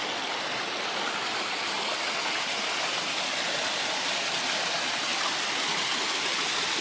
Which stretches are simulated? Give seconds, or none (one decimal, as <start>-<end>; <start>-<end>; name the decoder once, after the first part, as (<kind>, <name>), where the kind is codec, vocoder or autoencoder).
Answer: none